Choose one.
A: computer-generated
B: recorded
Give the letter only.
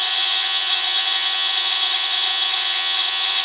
A